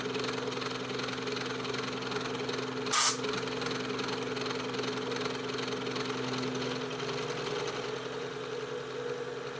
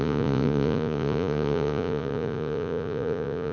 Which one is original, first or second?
first